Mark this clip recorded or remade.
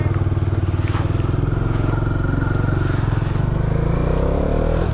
recorded